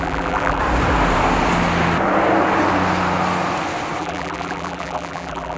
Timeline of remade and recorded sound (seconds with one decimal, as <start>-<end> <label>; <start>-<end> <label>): 0.0-0.6 remade; 0.6-4.0 recorded; 4.0-5.6 remade

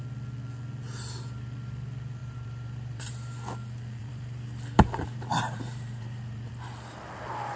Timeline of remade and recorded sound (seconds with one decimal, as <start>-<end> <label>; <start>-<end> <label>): 0.0-2.2 recorded; 2.2-3.1 remade; 3.1-4.0 recorded; 4.0-6.5 remade; 6.5-7.6 recorded

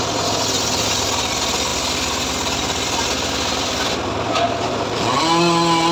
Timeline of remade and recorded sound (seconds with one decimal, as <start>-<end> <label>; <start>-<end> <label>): 0.0-5.9 recorded

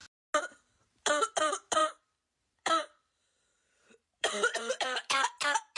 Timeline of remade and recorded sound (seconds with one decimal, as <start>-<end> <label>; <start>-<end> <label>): 0.0-0.8 recorded; 0.8-5.8 remade

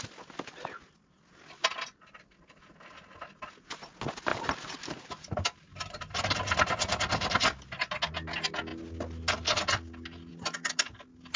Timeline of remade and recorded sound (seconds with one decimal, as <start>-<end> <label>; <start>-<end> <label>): 0.0-4.3 recorded; 4.3-6.0 remade; 6.0-11.4 recorded

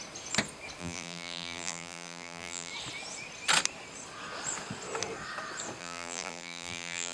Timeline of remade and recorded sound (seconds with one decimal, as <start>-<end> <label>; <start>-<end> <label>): 0.0-0.8 recorded; 0.8-2.7 remade; 2.7-5.8 recorded; 5.8-7.1 remade

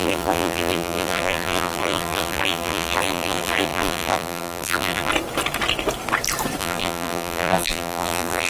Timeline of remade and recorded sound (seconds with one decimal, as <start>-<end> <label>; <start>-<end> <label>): 0.0-5.1 remade; 5.1-6.6 recorded; 6.6-8.5 remade